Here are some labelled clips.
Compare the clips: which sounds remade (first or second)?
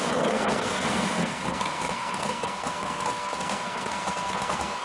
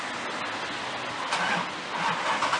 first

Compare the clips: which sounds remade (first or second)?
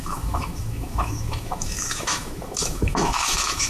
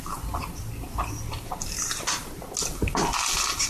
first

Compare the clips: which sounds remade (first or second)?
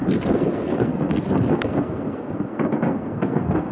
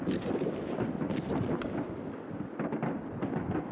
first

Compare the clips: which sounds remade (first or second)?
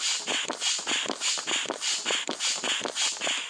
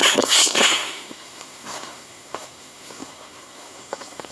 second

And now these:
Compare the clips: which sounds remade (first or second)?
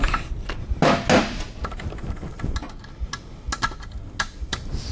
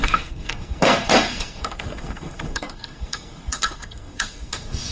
second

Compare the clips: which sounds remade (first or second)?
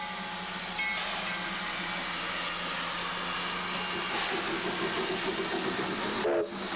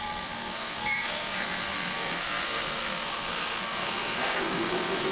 second